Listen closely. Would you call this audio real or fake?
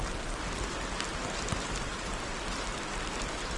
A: real